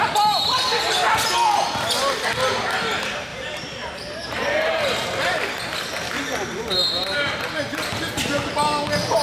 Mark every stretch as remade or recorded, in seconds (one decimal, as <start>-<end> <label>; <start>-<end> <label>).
0.0-3.3 recorded; 3.3-5.6 remade; 5.6-6.8 recorded; 6.8-7.6 remade; 7.6-9.2 recorded